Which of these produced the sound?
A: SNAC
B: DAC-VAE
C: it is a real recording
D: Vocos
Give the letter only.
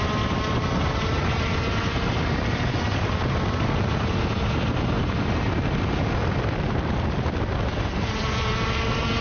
C